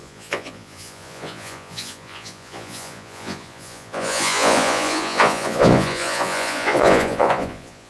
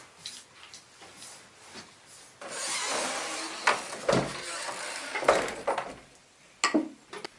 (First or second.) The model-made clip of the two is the first